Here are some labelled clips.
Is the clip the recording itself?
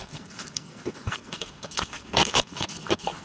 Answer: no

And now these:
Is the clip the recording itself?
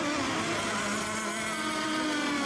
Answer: yes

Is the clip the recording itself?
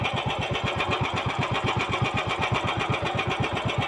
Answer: yes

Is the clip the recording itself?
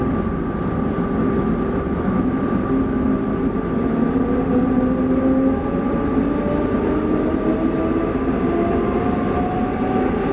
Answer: yes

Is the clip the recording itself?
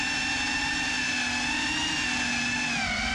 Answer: yes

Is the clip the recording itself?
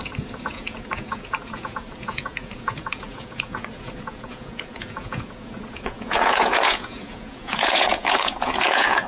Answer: no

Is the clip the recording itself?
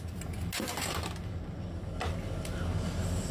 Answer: yes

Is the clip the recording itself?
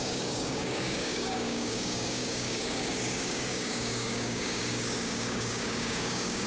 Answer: no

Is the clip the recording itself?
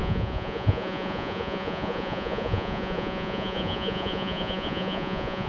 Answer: no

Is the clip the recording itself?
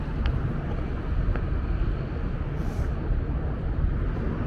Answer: yes